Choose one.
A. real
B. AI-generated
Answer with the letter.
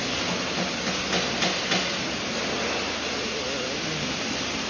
A